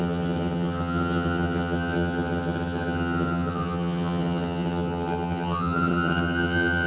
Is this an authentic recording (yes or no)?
no